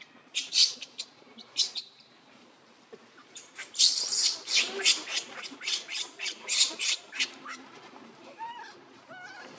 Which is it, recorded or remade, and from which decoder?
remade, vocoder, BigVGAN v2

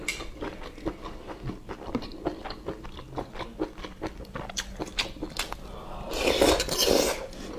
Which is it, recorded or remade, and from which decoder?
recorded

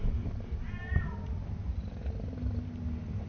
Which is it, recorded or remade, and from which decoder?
recorded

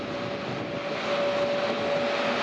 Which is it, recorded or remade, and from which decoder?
recorded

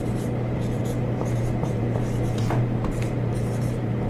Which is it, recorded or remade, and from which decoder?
remade, vocoder, BigVGAN v2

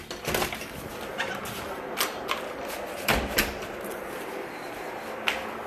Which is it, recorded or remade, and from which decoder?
recorded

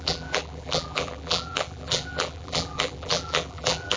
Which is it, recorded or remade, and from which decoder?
remade, vocoder, BigVGAN v2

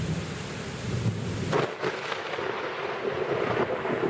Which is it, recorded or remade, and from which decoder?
recorded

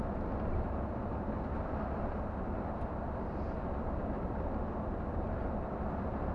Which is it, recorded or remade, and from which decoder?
remade, vocoder, BigVGAN v2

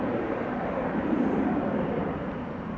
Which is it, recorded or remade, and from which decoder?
remade, vocoder, BigVGAN v2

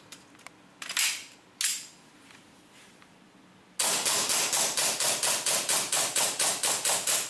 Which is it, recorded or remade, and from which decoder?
recorded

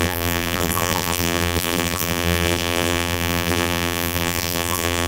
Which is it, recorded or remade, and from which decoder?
remade, vocoder, BigVGAN v2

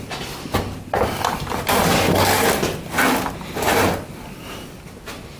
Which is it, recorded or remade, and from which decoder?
recorded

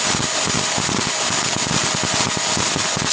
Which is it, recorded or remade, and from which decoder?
recorded